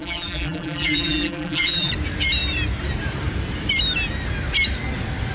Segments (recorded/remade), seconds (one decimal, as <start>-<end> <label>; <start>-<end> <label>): 0.0-1.9 remade; 1.9-5.3 recorded